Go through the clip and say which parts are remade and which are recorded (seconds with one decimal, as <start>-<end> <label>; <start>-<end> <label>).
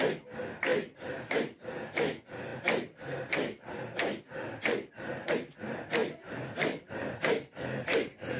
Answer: 0.0-0.7 recorded; 0.7-1.4 remade; 1.4-6.0 recorded; 6.0-6.9 remade; 6.9-8.4 recorded